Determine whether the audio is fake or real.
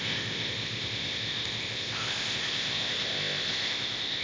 fake